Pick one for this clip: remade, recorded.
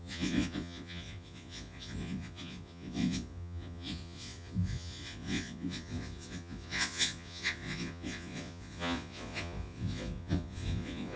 remade